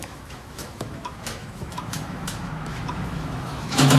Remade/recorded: remade